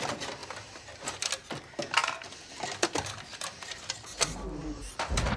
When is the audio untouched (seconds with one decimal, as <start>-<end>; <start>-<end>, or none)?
0.0-0.4; 1.3-3.3; 3.8-5.4